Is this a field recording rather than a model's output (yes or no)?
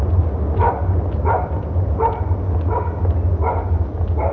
yes